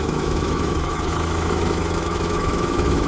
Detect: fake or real fake